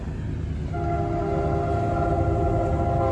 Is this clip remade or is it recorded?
recorded